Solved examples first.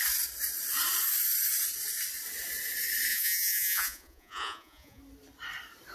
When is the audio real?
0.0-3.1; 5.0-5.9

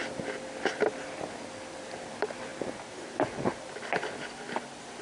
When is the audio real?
0.0-5.0

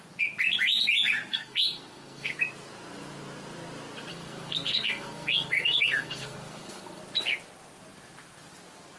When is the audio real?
0.0-1.3; 2.4-4.1; 7.0-9.0

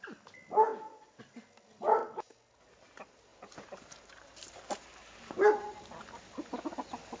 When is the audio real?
0.0-0.7; 1.2-3.3; 5.8-7.2

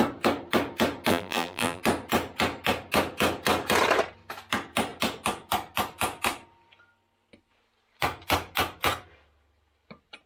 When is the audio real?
0.0-1.1; 1.8-10.3

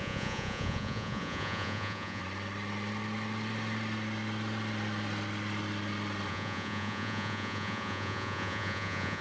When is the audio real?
2.2-6.3

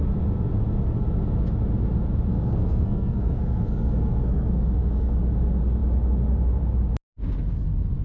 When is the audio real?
0.0-2.3; 5.2-8.0